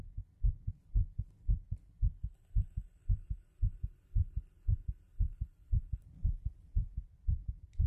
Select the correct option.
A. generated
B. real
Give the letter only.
B